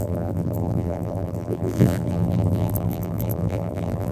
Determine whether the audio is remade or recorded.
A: remade